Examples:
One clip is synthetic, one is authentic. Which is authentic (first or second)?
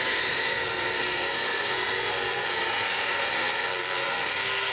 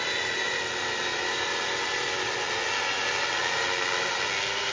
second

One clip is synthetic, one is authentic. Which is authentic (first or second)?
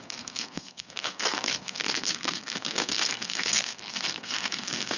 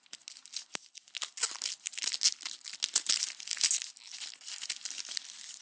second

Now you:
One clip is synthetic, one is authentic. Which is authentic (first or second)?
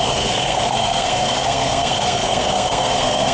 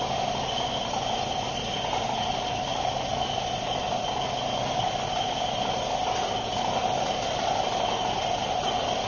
second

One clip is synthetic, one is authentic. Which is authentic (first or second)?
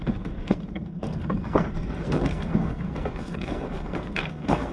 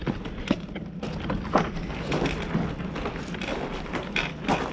second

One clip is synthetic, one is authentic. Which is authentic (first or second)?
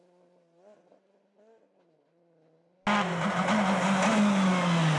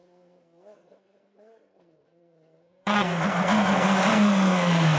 first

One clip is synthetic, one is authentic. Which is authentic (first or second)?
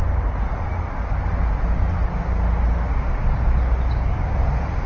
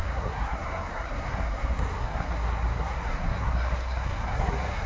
first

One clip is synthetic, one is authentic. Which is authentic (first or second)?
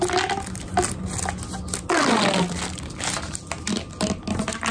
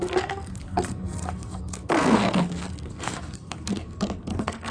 first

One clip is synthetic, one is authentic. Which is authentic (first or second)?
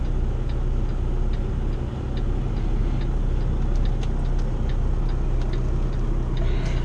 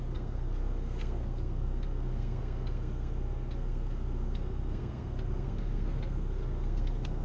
first